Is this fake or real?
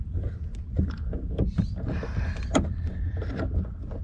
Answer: real